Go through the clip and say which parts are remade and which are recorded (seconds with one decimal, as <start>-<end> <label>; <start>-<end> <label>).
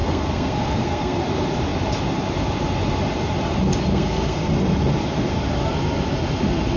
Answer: 0.0-1.2 remade; 1.2-3.9 recorded; 3.9-4.5 remade; 4.5-6.8 recorded